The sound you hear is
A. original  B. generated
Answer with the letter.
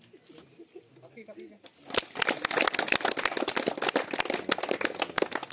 A